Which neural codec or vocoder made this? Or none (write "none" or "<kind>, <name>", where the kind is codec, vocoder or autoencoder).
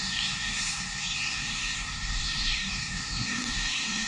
codec, SNAC